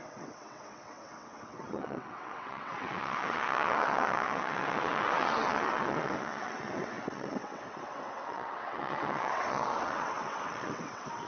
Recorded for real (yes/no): no